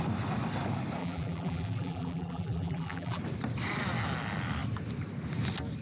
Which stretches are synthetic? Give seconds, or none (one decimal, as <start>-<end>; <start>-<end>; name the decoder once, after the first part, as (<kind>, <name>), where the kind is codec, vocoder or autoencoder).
1.0-3.2 (vocoder, BigVGAN v2)